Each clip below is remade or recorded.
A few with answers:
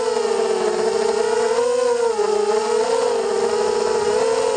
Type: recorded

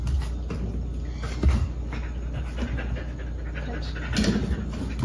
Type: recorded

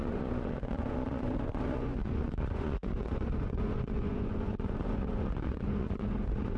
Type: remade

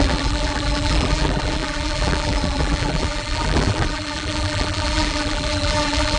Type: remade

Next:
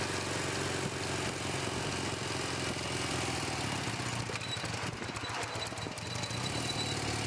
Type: recorded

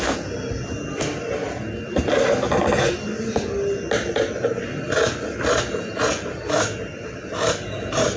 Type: recorded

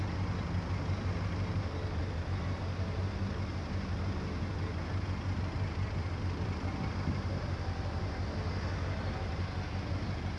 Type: recorded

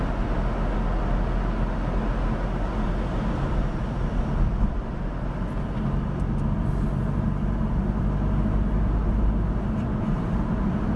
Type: recorded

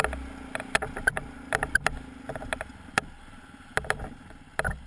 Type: recorded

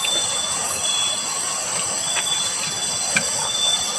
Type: recorded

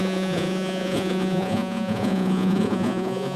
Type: remade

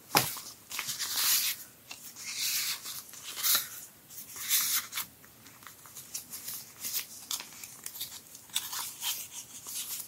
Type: recorded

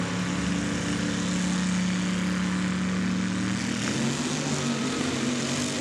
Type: recorded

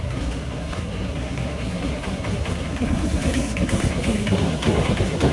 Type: remade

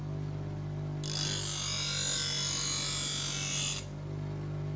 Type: recorded